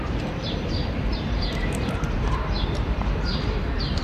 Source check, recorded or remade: remade